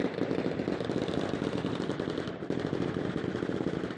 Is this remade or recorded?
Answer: recorded